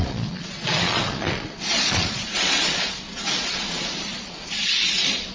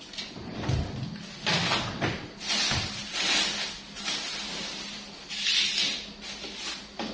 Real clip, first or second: second